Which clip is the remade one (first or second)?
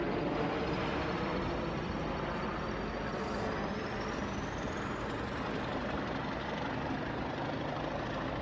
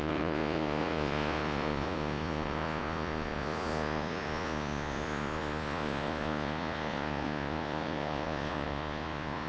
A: second